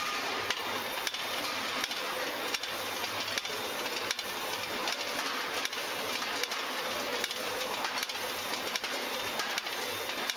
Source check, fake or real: real